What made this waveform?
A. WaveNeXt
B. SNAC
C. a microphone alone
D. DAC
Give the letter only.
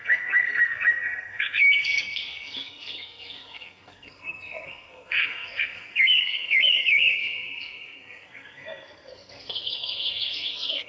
B